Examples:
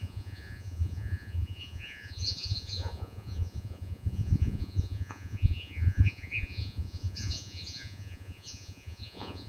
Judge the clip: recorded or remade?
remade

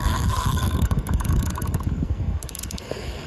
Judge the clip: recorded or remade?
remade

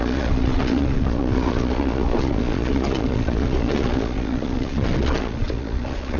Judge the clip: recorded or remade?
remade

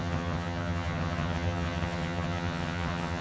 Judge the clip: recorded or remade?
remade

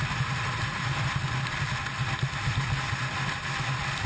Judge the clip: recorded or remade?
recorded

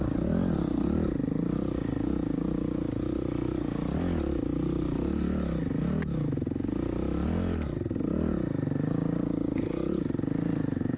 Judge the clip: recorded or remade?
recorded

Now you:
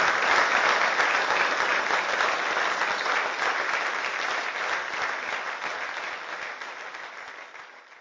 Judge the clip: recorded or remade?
recorded